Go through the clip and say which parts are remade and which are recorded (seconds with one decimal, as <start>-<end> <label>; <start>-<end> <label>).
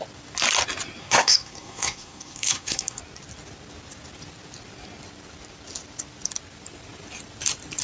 0.0-1.0 recorded; 1.0-3.0 remade; 3.0-7.8 recorded